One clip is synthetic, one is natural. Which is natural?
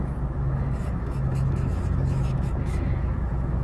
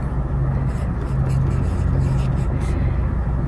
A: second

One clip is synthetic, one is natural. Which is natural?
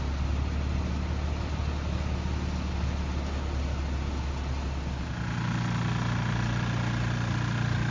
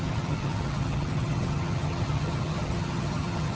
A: first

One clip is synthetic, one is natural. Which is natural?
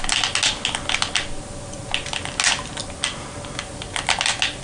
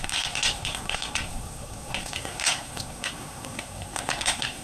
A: first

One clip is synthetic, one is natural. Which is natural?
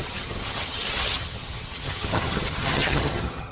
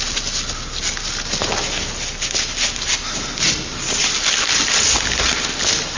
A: second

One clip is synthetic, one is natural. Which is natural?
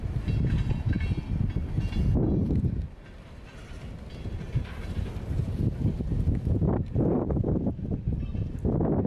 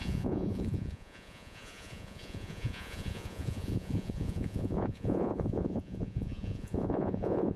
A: first